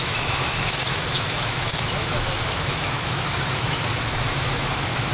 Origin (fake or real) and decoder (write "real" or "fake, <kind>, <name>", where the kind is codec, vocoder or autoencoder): fake, autoencoder, DAC-VAE